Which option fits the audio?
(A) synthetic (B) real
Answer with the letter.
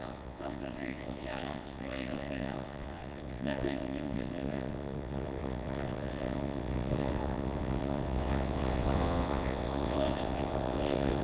A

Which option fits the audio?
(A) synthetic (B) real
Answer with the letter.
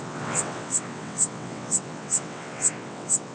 A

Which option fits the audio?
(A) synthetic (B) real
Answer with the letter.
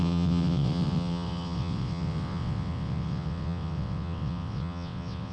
A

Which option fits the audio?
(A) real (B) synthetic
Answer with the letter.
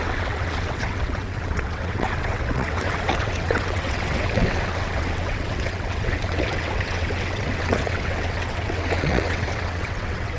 B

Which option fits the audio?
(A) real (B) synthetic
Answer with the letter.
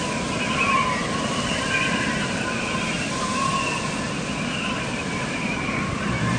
A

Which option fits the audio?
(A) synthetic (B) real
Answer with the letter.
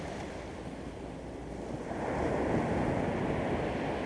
B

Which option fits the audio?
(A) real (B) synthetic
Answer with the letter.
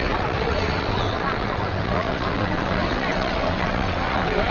B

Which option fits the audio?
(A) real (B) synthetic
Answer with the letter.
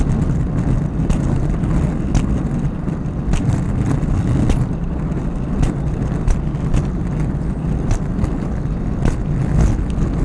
A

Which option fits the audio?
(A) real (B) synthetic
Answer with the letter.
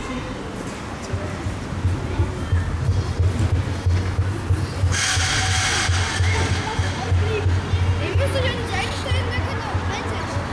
A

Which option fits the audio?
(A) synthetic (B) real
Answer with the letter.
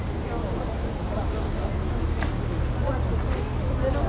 B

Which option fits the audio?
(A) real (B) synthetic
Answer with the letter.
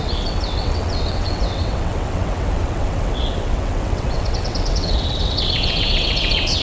B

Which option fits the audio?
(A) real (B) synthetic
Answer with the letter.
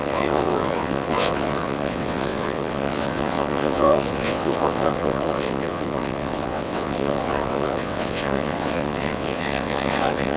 B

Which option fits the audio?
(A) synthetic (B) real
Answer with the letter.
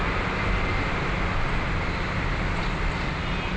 B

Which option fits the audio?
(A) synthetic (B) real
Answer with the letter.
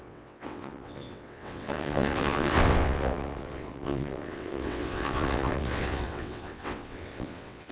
A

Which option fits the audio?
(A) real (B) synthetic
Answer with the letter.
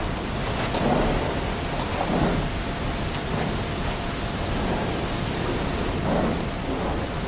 A